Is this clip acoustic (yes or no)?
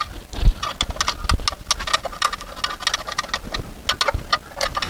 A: yes